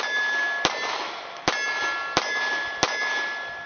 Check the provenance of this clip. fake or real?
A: real